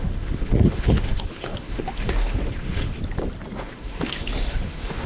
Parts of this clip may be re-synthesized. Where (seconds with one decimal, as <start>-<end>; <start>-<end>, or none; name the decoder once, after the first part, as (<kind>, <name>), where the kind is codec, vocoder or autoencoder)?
0.0-3.0 (autoencoder, DAC-VAE); 3.6-5.1